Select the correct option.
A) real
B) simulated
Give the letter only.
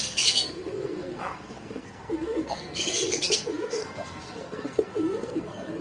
B